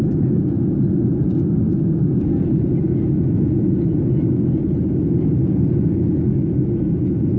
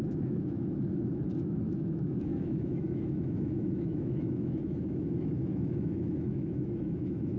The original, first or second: first